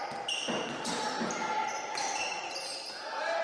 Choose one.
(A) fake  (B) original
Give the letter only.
B